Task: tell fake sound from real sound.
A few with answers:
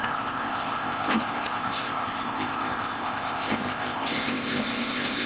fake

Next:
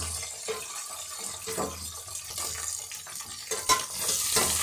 real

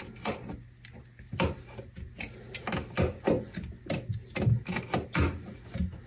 real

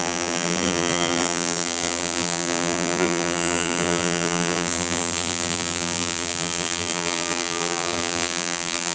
fake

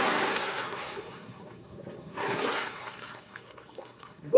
fake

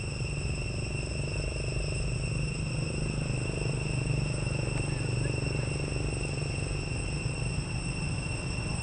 real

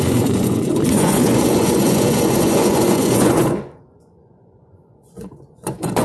fake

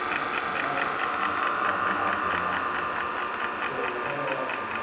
real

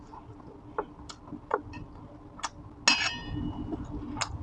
real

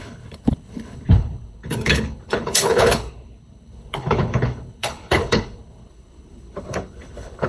fake